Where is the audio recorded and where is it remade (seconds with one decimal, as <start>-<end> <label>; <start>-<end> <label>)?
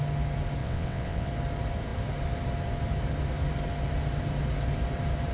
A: 0.0-0.6 recorded; 0.6-1.3 remade; 1.3-5.3 recorded